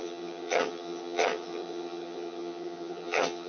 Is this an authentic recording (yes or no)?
no